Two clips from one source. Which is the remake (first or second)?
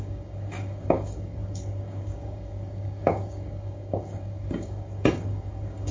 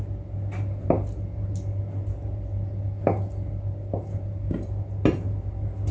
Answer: first